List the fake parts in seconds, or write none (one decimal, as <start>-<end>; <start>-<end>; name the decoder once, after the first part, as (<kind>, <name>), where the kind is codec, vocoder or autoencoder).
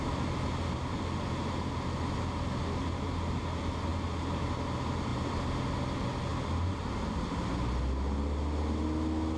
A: none